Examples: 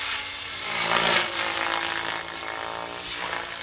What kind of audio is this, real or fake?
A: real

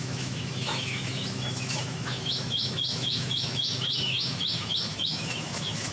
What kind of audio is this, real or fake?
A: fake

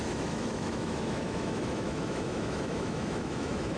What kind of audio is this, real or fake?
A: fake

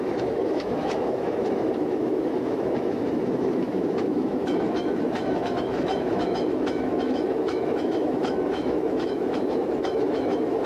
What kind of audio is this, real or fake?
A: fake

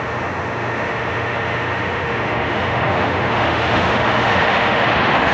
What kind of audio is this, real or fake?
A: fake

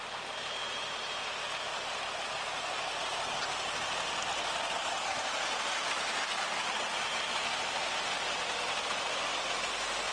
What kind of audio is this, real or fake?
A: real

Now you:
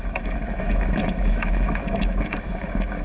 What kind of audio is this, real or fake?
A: fake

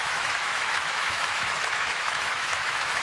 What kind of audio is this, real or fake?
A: fake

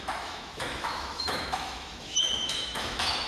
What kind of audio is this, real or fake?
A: fake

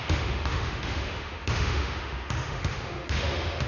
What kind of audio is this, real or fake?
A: fake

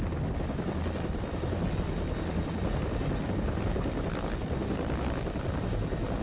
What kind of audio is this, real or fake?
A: real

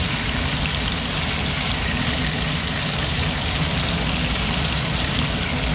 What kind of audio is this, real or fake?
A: real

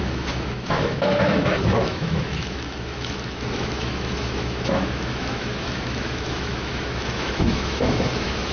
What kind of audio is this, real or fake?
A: fake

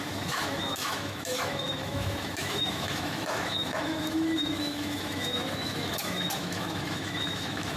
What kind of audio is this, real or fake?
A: fake